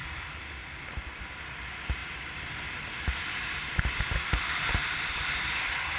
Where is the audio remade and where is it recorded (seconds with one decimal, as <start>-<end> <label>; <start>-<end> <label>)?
0.0-6.0 recorded